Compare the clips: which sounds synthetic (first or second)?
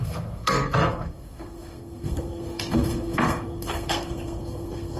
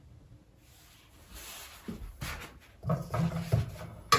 first